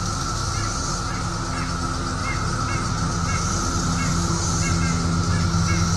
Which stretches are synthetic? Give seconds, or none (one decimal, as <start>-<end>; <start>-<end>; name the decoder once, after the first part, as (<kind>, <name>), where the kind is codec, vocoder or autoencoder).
none

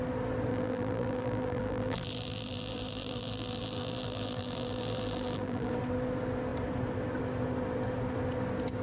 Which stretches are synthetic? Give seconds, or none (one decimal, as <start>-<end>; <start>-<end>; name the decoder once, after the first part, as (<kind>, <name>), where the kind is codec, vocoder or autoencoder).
0.5-5.7 (vocoder, BigVGAN v2)